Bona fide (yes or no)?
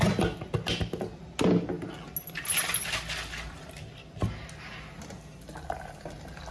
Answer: yes